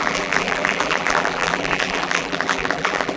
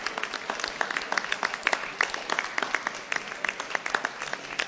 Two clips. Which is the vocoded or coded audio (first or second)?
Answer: first